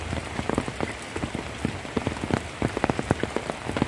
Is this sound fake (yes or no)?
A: no